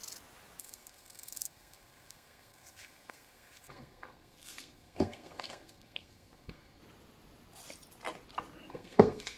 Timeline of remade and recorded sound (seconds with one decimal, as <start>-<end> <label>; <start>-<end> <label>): 0.0-0.6 recorded; 0.6-6.8 remade; 6.8-8.7 recorded; 8.7-9.4 remade